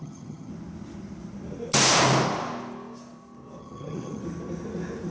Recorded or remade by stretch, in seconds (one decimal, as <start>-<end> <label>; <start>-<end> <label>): 0.0-0.5 remade; 0.5-3.6 recorded; 3.6-4.2 remade; 4.2-5.1 recorded